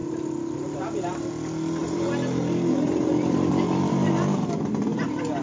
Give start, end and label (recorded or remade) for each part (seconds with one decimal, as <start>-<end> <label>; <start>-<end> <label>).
0.0-1.3 remade; 1.3-1.8 recorded; 1.8-4.2 remade; 4.2-5.4 recorded